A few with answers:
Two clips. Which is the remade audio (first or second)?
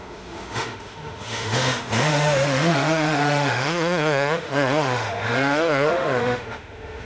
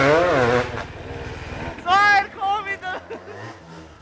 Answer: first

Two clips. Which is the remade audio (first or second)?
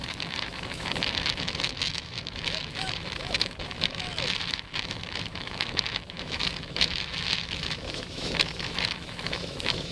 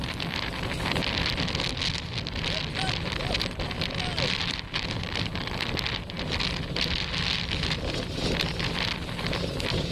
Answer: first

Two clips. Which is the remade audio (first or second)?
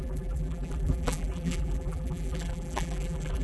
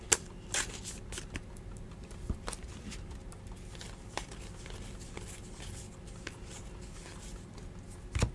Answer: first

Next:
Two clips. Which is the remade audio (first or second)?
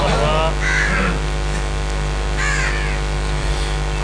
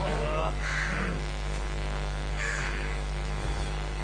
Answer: second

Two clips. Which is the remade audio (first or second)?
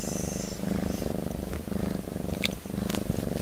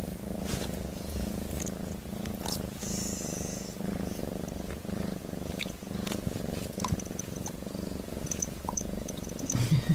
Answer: second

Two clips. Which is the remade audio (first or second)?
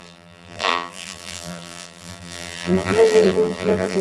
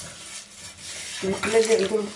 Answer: first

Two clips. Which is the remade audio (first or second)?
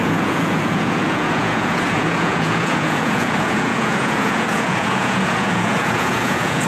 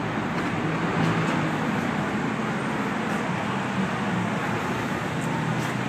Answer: first